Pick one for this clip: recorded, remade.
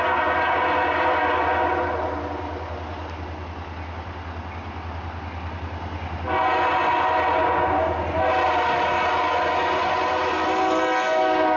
recorded